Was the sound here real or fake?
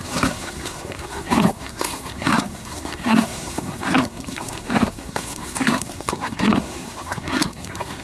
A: fake